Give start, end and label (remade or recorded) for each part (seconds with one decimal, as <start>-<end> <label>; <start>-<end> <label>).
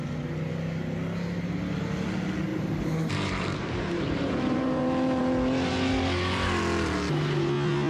0.0-2.5 recorded; 2.5-4.8 remade; 4.8-7.9 recorded